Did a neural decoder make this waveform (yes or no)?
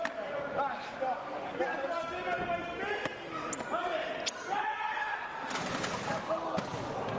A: no